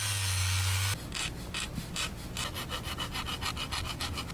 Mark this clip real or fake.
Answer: real